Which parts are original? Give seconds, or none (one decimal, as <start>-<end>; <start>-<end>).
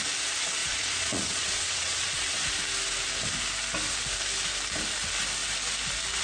0.0-0.6; 2.5-6.2